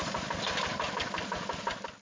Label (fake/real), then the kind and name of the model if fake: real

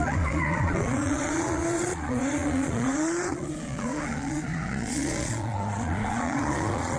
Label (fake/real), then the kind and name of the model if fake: fake, vocoder, Vocos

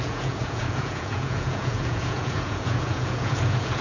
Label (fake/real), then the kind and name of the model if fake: fake, vocoder, Vocos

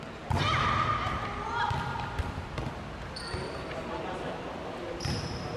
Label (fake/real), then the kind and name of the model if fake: real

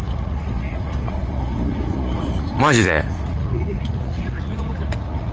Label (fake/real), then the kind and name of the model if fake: fake, vocoder, Vocos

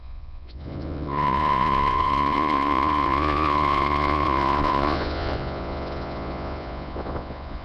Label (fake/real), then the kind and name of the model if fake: fake, vocoder, Vocos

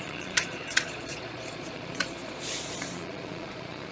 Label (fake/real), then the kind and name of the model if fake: fake, vocoder, Vocos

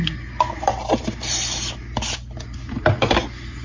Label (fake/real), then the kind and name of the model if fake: real